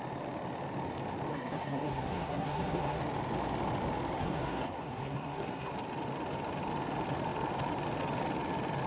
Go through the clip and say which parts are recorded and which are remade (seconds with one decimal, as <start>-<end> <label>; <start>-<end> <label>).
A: 0.0-1.3 recorded; 1.3-3.0 remade; 3.0-4.2 recorded; 4.2-5.7 remade; 5.7-8.9 recorded